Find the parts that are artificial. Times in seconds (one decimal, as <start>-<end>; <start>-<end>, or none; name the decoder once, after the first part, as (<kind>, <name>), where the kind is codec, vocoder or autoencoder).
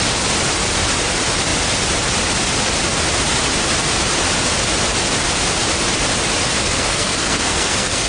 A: 6.6-8.1 (codec, SNAC)